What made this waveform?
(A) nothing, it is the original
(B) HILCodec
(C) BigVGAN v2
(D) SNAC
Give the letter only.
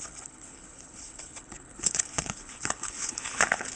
B